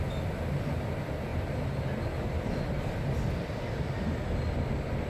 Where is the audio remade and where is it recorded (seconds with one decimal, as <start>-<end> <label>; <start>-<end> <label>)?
0.0-1.3 recorded; 1.3-3.6 remade; 3.6-5.1 recorded

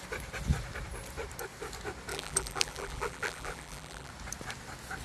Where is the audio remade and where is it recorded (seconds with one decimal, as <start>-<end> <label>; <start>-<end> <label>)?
0.0-2.1 recorded; 2.1-4.1 remade; 4.1-5.0 recorded

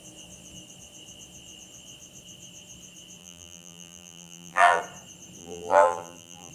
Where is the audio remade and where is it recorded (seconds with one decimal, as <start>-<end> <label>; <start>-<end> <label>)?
0.0-3.2 recorded; 3.2-4.8 remade; 4.8-5.4 recorded; 5.4-6.5 remade

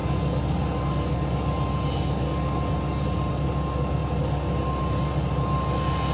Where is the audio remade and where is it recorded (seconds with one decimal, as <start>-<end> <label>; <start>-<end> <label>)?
0.0-6.1 recorded

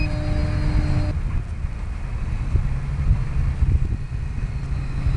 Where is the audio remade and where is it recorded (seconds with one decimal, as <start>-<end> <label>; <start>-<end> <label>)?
0.0-5.2 recorded